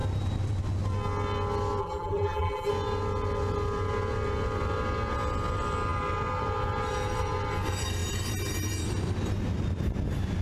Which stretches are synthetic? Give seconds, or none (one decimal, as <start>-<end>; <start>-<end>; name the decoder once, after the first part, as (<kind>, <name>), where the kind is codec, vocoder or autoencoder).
1.8-2.7 (vocoder, BigVGAN v2)